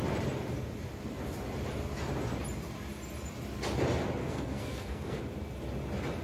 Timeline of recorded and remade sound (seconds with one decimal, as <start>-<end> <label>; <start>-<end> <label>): 0.0-4.2 recorded; 4.2-5.2 remade; 5.2-6.2 recorded